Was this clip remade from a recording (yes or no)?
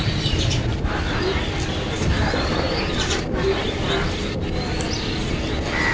no